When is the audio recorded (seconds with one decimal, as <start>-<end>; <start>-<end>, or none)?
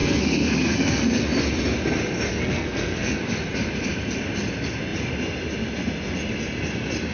1.2-2.3; 3.2-7.1